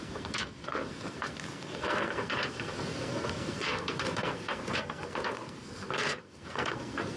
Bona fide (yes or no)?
no